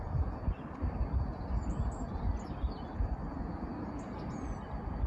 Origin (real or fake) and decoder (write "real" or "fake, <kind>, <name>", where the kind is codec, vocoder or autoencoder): real